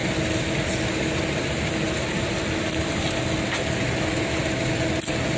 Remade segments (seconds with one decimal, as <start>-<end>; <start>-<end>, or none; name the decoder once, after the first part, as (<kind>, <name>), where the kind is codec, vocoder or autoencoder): 0.0-0.6 (vocoder, BigVGAN v2)